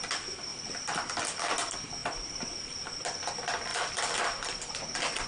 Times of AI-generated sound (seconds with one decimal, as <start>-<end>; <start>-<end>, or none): 2.0-2.8; 3.7-4.8